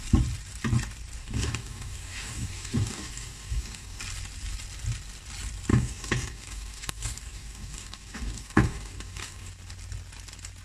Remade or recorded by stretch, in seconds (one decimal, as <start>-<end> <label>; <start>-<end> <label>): 0.0-1.2 recorded; 1.2-4.0 remade; 4.0-5.7 recorded; 5.7-9.5 remade; 9.5-10.6 recorded